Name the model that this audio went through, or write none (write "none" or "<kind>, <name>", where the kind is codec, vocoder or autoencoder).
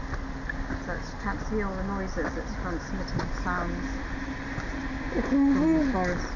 none